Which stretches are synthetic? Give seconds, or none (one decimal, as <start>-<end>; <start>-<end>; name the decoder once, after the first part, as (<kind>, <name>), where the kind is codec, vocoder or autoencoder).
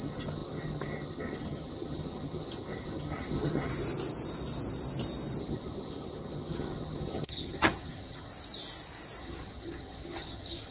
0.0-3.7 (vocoder, HiFi-GAN); 5.4-8.3; 9.2-10.7